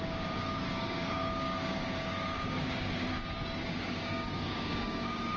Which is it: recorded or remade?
remade